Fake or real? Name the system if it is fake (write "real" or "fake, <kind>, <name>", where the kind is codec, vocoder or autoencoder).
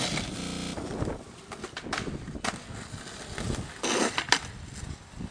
real